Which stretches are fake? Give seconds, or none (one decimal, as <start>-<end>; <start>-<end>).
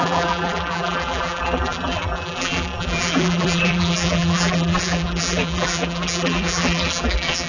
0.0-7.5